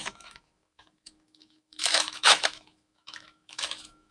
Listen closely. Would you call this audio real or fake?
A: fake